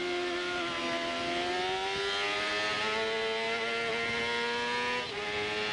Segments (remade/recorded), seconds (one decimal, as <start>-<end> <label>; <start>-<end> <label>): 0.0-5.7 recorded